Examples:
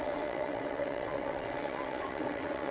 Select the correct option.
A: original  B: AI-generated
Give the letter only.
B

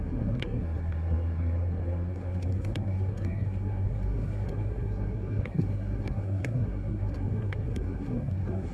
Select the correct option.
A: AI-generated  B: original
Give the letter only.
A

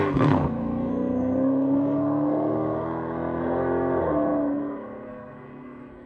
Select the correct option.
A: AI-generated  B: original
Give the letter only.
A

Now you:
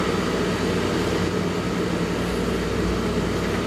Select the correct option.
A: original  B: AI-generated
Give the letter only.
A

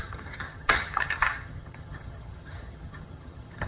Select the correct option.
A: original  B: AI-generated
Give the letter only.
B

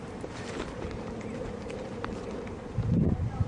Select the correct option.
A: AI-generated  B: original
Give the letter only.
A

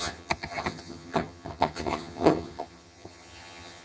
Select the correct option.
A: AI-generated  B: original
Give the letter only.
A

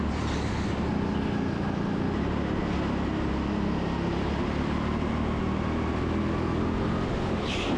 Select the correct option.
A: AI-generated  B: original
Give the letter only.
B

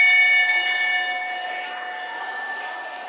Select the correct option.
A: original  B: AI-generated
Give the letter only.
A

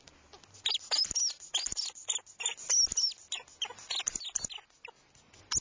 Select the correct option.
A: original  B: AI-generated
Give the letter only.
A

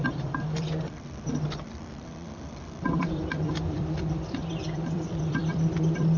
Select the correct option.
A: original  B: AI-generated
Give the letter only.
B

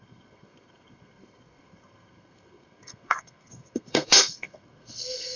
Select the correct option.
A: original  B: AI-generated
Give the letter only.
B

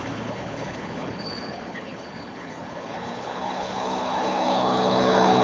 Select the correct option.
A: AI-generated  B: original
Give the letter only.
A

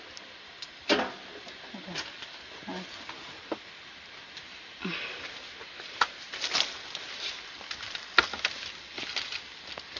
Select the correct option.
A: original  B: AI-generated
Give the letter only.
A